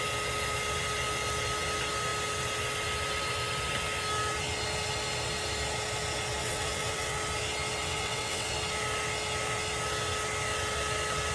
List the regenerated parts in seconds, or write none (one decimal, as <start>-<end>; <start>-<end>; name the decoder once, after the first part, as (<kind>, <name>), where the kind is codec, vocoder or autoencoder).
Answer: 6.4-7.2 (vocoder, WaveNeXt); 7.8-8.5